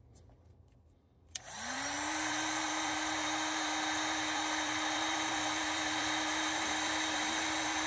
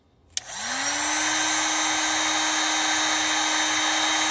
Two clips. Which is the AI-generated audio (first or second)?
first